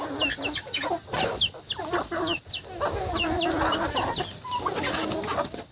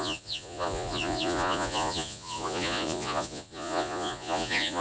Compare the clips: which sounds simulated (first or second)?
second